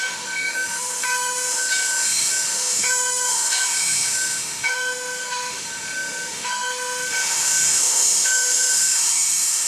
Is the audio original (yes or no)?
no